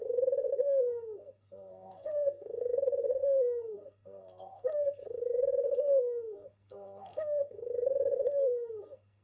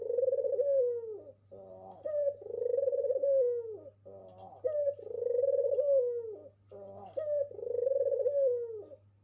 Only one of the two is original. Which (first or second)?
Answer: second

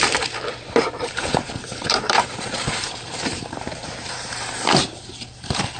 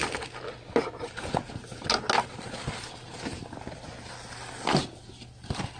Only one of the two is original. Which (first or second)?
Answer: second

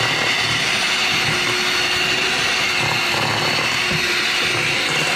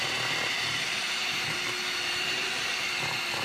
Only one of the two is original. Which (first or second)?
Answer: first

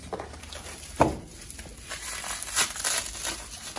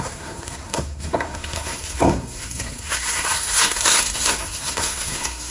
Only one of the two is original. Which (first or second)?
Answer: first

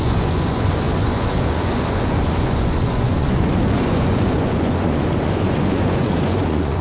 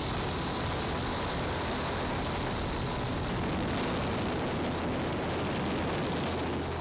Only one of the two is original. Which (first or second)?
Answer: second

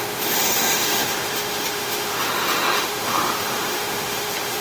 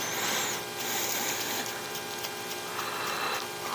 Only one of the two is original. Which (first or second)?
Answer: second